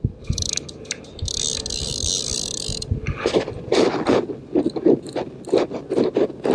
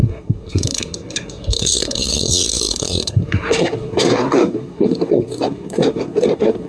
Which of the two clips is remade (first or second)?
second